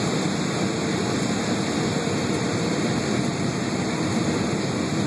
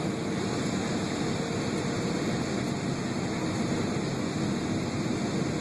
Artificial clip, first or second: first